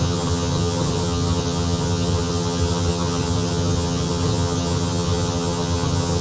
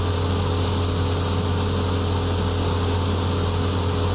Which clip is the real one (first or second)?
second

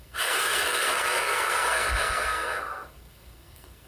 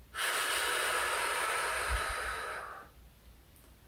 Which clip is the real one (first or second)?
second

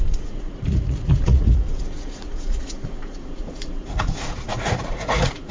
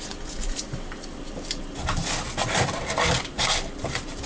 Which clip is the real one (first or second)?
second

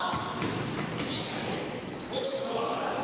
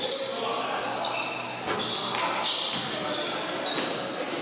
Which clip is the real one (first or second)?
second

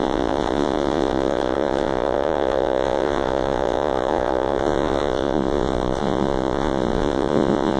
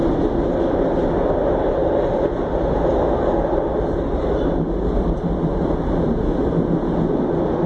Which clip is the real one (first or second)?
second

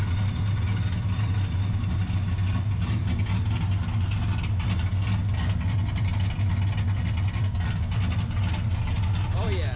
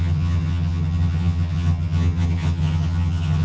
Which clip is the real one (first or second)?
first